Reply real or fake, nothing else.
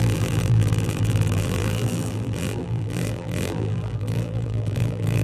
fake